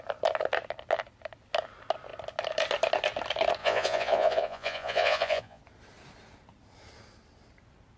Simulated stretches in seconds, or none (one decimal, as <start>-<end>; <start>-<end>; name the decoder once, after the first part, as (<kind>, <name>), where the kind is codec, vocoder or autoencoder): 3.6-5.6 (vocoder, Vocos)